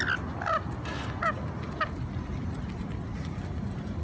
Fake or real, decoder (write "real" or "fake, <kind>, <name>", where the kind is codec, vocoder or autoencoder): real